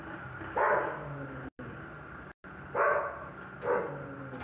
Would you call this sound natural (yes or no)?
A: yes